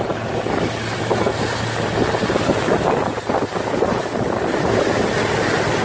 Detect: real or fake real